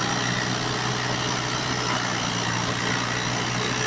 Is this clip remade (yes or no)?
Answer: no